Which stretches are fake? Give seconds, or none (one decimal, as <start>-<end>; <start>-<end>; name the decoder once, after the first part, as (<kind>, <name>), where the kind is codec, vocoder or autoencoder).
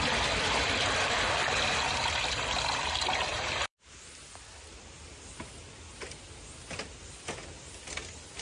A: 3.3-4.1 (vocoder, BigVGAN v2)